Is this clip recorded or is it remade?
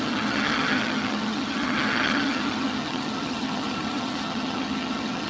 remade